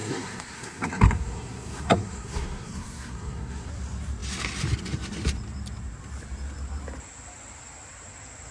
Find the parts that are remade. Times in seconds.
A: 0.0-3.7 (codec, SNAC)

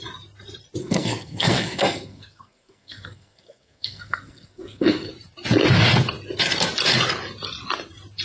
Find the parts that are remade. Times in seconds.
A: 0.8-5.1 (codec, SNAC)

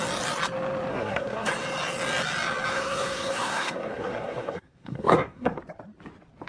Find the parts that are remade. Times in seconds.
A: 0.9-1.5 (codec, SNAC); 2.7-5.6

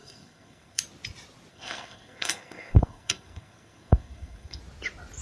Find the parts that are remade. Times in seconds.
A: 0.0-0.8 (codec, SNAC); 1.5-4.6